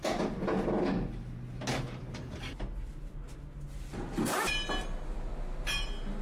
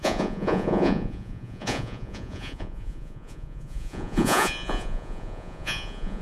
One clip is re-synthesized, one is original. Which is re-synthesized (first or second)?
second